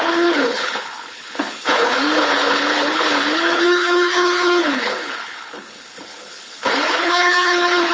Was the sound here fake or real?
fake